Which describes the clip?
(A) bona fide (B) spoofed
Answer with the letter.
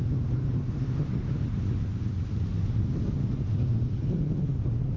A